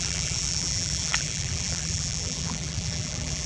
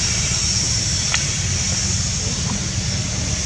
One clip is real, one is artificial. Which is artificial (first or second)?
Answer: first